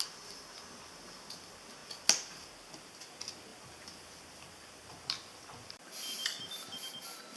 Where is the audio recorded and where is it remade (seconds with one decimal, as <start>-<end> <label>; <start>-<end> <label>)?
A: 0.0-3.5 recorded; 3.5-5.9 remade; 5.9-7.4 recorded